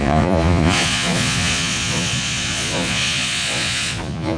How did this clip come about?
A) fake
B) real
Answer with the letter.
A